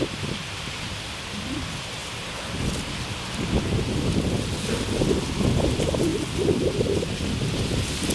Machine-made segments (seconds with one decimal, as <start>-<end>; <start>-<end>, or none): none